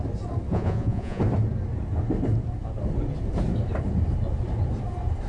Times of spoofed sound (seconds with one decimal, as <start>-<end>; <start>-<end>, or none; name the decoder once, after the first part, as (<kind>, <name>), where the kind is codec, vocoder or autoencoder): 0.5-1.2 (vocoder, Vocos)

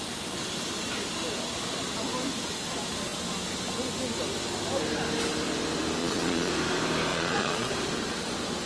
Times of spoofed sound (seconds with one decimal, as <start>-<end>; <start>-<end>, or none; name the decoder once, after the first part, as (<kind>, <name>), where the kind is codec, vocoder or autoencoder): 6.0-6.5 (vocoder, Vocos); 7.1-7.7